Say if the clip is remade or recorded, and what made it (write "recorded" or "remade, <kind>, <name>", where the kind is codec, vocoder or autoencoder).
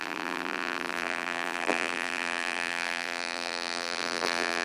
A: remade, vocoder, BigVGAN v2